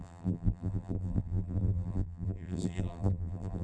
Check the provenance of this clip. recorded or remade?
remade